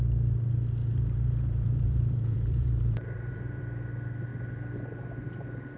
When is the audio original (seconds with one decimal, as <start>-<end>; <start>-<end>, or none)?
0.0-0.8; 3.6-5.8